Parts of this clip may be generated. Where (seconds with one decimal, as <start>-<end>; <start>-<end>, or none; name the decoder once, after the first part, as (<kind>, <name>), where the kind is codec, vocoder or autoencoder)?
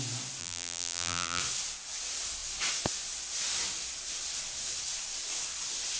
0.4-1.4 (vocoder, BigVGAN v2)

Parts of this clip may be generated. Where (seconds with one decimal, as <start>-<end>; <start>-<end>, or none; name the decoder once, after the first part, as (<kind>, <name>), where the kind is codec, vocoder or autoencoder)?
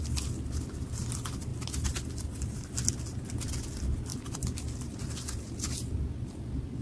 1.5-2.7 (vocoder, BigVGAN v2); 4.1-5.0